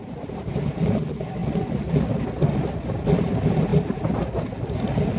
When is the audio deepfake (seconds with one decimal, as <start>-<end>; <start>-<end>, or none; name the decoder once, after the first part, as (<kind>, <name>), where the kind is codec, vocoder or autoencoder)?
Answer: 3.7-4.3 (vocoder, BigVGAN v2)